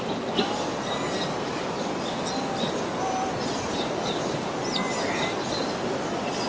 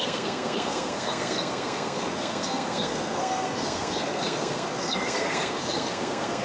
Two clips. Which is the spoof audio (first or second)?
second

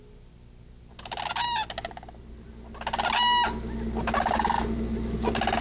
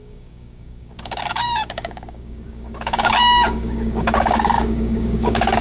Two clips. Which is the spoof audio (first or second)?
second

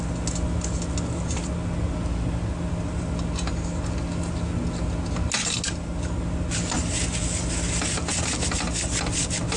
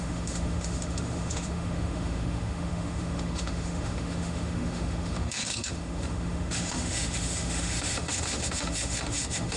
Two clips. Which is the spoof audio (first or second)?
second